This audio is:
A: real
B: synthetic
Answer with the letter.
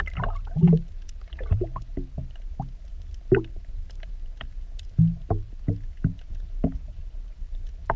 A